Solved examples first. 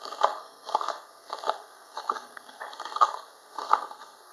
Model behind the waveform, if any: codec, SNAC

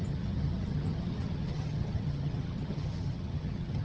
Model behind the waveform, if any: vocoder, HiFi-GAN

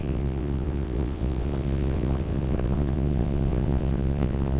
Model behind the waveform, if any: vocoder, WaveNeXt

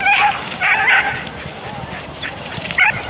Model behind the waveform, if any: none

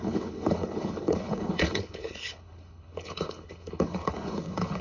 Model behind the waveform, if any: codec, HILCodec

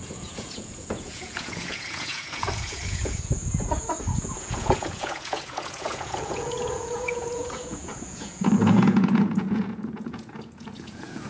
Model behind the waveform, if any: vocoder, Vocos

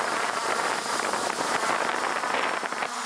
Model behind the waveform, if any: none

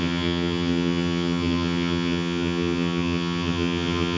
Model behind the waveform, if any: vocoder, HiFi-GAN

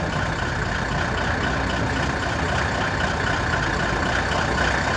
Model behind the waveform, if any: none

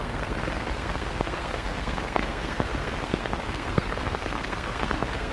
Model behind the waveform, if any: codec, SNAC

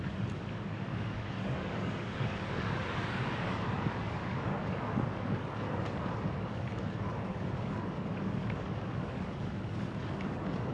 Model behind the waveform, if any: codec, DAC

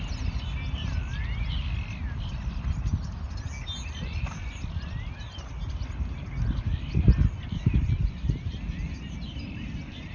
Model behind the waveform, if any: none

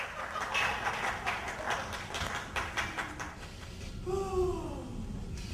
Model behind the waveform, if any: none